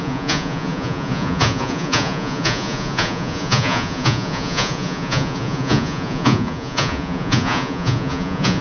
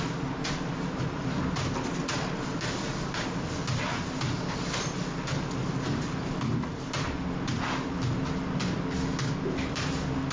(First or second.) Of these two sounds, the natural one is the second